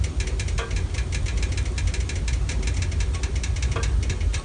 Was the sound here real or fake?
real